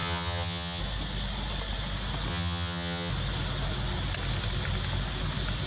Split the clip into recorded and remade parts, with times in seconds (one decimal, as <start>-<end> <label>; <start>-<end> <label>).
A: 0.0-0.8 remade; 0.8-2.3 recorded; 2.3-3.1 remade; 3.1-5.7 recorded